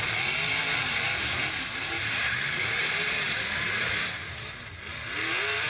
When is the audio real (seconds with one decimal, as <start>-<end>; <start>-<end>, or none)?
0.0-0.8; 4.2-5.7